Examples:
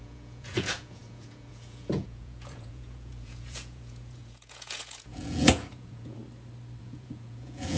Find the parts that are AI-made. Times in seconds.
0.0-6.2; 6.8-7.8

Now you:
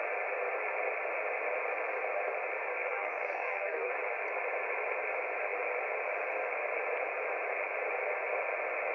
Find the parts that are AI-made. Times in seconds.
2.8-3.9

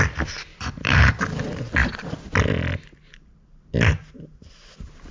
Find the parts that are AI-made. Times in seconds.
0.5-1.1

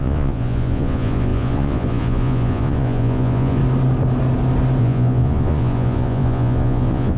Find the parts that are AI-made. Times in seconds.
0.0-3.6; 4.8-7.2

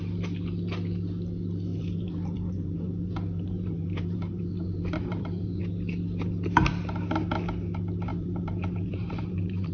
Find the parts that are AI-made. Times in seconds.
1.7-5.6; 8.1-9.7

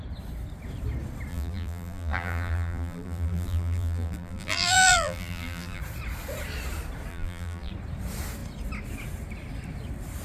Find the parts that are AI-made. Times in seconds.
1.3-5.8; 7.1-7.7